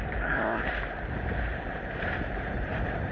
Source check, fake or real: real